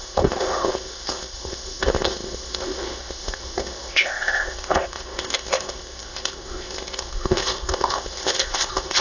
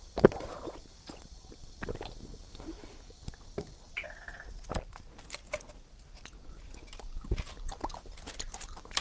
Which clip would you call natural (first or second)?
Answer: second